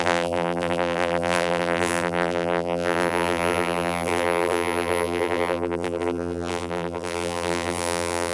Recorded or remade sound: remade